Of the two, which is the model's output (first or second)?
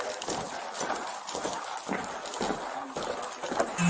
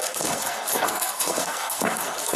second